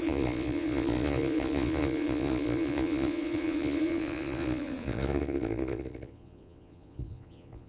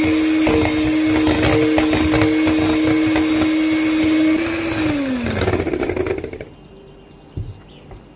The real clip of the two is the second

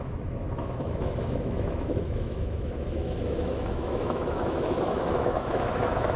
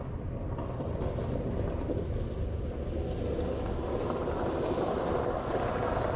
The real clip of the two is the second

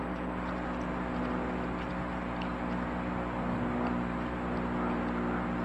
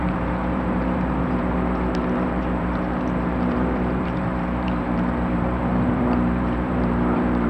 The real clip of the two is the first